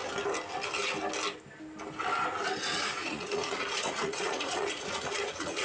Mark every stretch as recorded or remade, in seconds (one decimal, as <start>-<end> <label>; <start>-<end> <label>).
0.0-2.6 recorded; 2.6-5.6 remade